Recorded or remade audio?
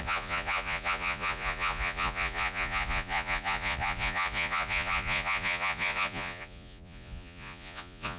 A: remade